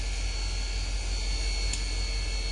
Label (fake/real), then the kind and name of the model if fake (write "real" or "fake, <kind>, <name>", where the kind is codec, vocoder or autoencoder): real